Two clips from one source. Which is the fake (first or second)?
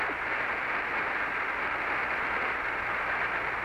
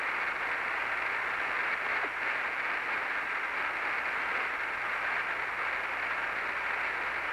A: first